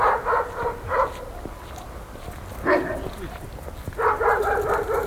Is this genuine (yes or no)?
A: yes